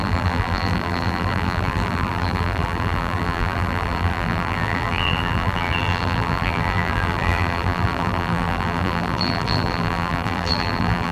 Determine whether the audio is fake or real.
fake